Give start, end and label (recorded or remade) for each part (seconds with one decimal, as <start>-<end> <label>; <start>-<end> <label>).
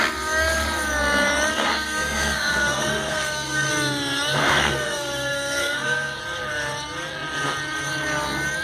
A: 0.0-1.7 recorded; 1.7-3.7 remade; 3.7-4.4 recorded; 4.4-6.2 remade; 6.2-8.6 recorded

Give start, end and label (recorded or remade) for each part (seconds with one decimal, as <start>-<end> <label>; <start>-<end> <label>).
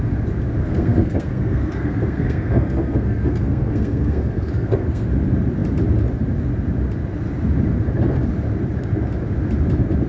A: 0.0-0.6 recorded; 0.6-5.1 remade; 5.1-10.1 recorded